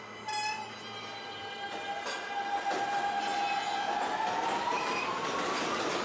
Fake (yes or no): no